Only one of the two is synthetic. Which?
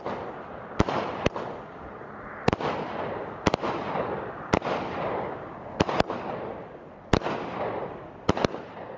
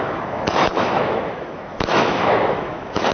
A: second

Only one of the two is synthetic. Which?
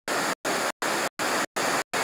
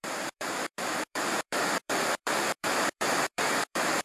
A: second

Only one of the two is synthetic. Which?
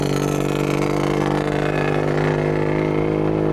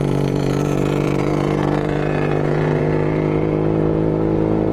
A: second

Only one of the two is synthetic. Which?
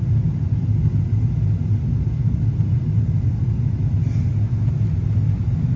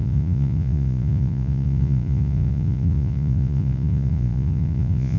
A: second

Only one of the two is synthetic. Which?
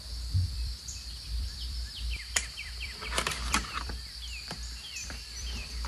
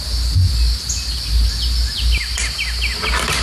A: first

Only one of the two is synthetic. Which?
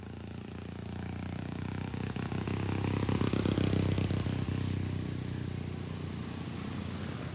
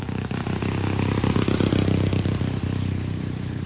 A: second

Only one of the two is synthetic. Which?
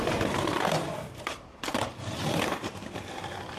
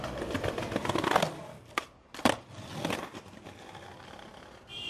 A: first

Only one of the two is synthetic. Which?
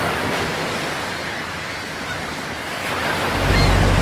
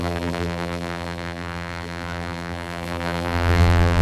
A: second